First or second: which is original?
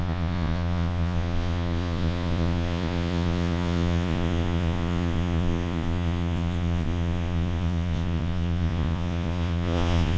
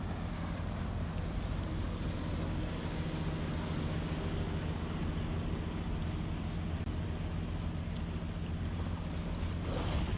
second